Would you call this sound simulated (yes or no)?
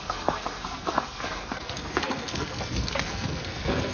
yes